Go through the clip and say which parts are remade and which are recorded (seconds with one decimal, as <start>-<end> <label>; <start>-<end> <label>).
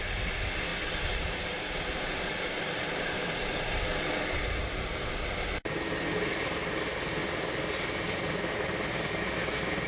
0.0-0.7 recorded; 0.7-5.7 remade; 5.7-9.9 recorded